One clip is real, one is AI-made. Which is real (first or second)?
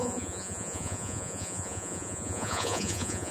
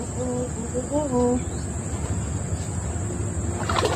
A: second